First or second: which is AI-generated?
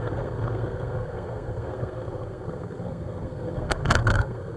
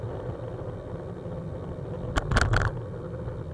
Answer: first